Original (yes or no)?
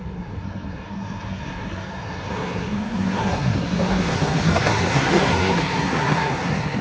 no